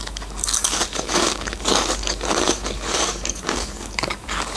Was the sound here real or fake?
fake